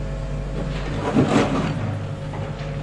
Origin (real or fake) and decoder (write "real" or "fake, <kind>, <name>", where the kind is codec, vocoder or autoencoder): real